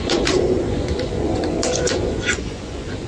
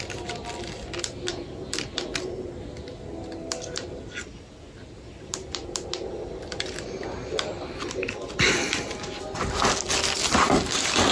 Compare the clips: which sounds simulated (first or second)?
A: first